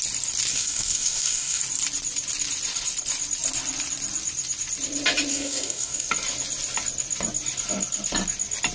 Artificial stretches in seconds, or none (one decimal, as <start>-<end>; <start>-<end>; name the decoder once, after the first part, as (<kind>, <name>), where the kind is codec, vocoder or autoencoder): 0.5-1.6 (codec, DAC); 5.3-6.1